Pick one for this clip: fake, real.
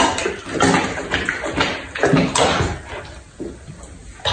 real